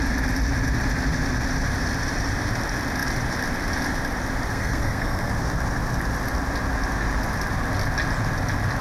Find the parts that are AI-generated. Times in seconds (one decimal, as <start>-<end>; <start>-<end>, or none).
4.5-5.3